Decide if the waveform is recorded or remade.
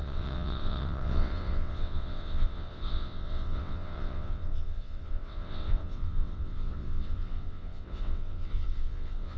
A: remade